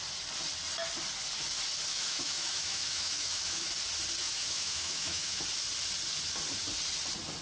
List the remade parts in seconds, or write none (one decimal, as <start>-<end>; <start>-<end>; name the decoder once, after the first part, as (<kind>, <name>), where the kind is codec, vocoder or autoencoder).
1.9-3.7 (autoencoder, DAC-VAE); 4.2-5.4